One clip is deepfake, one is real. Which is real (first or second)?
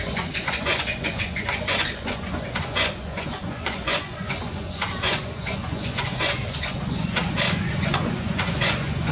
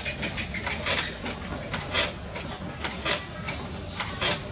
second